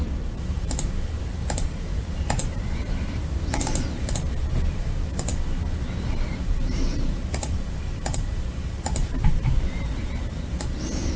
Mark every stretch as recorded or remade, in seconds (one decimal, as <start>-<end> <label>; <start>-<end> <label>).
0.0-5.3 remade; 5.3-6.4 recorded; 6.4-11.2 remade